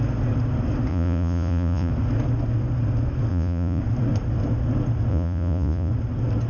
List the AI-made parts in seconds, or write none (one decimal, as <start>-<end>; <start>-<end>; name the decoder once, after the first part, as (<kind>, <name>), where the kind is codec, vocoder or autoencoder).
0.9-1.9 (vocoder, Vocos); 3.3-3.8; 5.1-5.9